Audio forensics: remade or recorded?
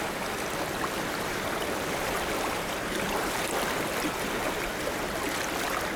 remade